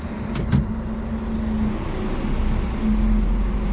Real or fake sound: real